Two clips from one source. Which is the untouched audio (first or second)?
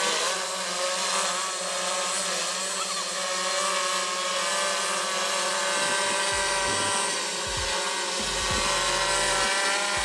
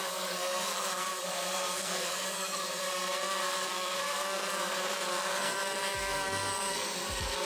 first